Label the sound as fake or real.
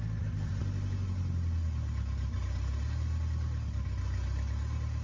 real